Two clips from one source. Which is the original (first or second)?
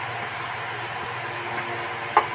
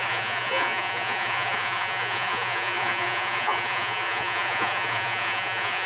first